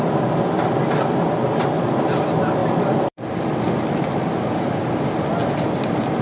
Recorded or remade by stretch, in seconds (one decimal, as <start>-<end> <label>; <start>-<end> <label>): 0.0-6.2 recorded